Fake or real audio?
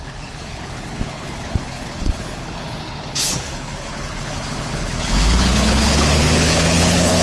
fake